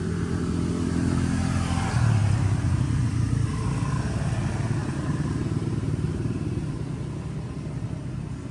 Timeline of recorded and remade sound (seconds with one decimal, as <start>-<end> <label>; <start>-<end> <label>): 0.0-2.2 recorded; 2.2-2.9 remade; 2.9-4.8 recorded; 4.8-7.2 remade; 7.2-8.5 recorded